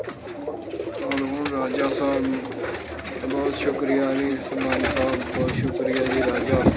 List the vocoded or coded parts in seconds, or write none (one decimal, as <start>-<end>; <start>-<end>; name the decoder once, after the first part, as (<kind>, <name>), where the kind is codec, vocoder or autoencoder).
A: none